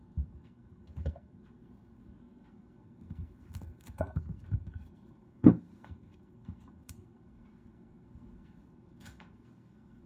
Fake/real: fake